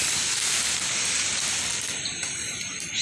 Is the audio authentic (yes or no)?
yes